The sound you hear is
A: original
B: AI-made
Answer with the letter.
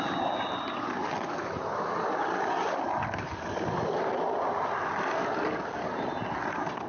A